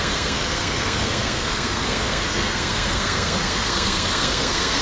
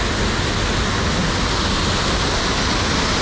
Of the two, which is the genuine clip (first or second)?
second